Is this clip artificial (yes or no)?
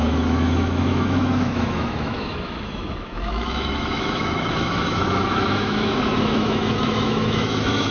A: yes